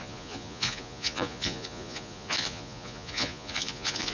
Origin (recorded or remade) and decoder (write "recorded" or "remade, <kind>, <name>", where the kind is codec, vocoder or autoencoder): remade, vocoder, Vocos